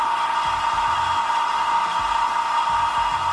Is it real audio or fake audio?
real